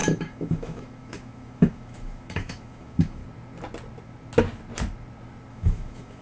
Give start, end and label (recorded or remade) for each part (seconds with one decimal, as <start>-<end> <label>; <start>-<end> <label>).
0.0-3.2 remade; 3.2-5.5 recorded; 5.5-6.2 remade